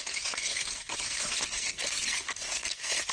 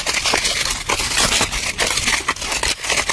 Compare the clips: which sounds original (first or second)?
second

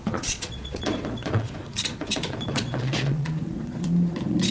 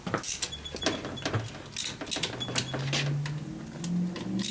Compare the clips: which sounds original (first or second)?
second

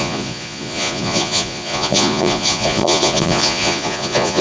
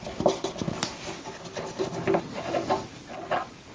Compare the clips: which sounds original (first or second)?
second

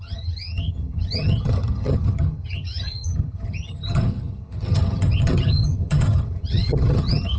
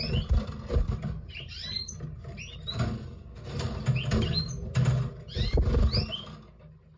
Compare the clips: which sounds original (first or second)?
second